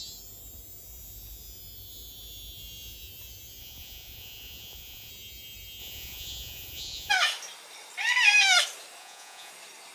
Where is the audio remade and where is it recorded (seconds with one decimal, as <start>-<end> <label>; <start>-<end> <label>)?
0.0-3.6 recorded; 3.6-5.1 remade; 5.1-5.8 recorded; 5.8-7.1 remade; 7.1-9.0 recorded; 9.0-9.5 remade; 9.5-9.9 recorded